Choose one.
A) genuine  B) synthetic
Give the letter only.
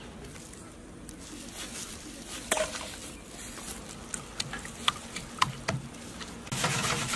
A